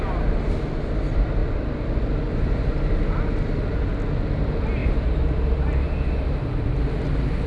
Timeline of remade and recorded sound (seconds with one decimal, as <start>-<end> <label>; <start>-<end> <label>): 0.0-7.5 recorded